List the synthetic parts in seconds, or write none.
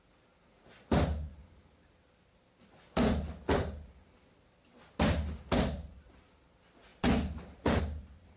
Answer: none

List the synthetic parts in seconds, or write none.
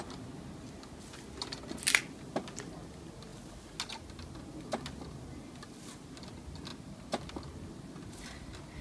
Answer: none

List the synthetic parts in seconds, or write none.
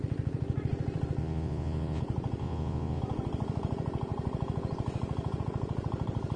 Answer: 1.2-2.0 (vocoder, Vocos); 2.4-3.0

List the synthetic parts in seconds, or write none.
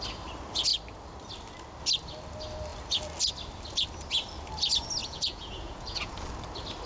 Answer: 5.0-6.1 (vocoder, Vocos)